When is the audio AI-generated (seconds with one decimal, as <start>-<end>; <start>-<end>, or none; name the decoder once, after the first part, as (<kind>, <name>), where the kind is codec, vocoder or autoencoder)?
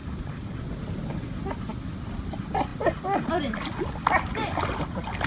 0.0-1.2 (vocoder, BigVGAN v2)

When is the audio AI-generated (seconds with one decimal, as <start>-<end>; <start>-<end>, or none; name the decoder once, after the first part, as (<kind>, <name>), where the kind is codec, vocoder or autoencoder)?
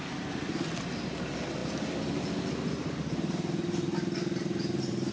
none